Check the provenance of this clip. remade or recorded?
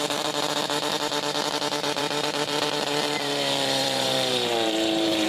remade